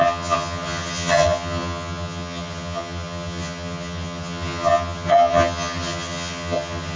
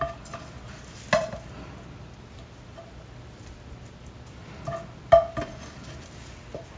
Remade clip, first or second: first